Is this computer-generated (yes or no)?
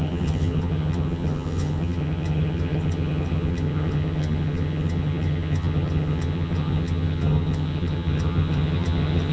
yes